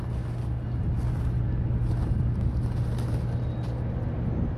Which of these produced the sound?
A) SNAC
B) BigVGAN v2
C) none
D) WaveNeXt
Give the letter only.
C